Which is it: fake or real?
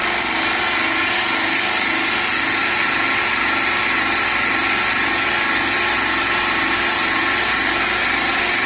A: real